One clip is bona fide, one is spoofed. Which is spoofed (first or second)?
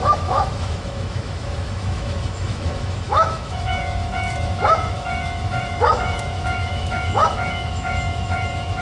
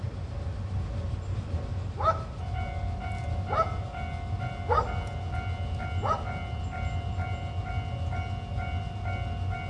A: first